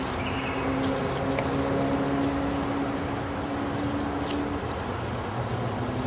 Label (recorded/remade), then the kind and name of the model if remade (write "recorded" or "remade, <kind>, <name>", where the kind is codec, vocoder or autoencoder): recorded